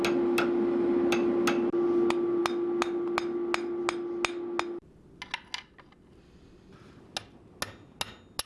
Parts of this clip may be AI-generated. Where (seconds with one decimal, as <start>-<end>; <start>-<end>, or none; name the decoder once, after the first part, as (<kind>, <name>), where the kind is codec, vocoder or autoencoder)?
none